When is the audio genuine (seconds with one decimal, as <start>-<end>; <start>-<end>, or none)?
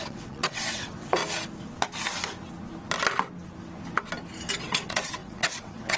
1.2-4.6